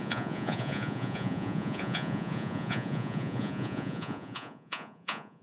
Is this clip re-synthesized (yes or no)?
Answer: yes